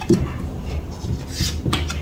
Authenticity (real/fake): real